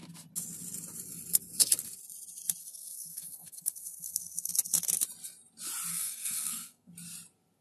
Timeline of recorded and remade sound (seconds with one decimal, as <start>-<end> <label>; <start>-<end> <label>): 0.0-2.6 recorded; 2.6-4.5 remade; 4.5-5.9 recorded; 5.9-6.9 remade; 6.9-7.6 recorded